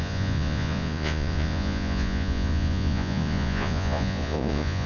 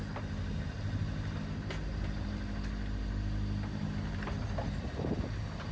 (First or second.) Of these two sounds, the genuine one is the second